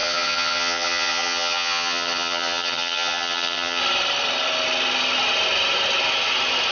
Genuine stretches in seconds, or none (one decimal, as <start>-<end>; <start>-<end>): 3.8-6.7